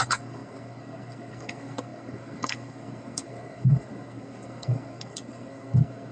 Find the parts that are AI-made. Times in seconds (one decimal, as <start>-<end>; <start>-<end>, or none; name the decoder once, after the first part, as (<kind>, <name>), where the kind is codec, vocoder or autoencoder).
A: 0.0-6.1 (codec, SNAC)

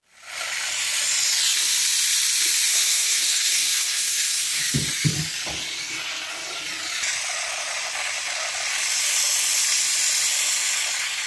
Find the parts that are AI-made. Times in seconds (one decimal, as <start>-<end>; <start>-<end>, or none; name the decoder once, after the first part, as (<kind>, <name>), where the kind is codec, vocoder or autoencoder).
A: 2.7-4.6 (codec, SNAC)

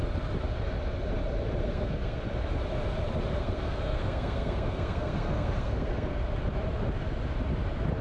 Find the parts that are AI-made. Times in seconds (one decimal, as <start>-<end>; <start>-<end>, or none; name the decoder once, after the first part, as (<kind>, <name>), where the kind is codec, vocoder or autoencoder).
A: 1.6-2.2 (codec, SNAC); 3.3-6.2

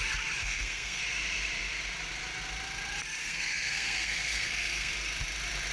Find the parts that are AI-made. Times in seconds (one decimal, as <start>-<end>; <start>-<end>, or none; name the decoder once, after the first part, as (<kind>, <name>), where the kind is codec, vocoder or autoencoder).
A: 0.4-1.0 (codec, SNAC); 3.2-4.9

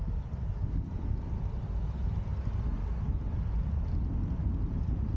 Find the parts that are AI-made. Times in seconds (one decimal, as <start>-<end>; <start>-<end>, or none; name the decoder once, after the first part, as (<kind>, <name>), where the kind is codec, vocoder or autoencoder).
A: none